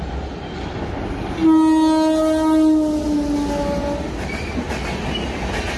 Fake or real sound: real